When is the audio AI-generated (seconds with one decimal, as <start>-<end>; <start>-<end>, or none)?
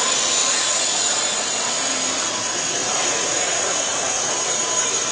0.4-1.1; 2.8-4.3